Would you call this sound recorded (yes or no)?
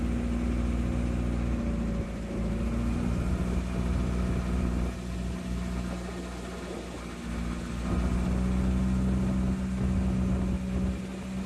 yes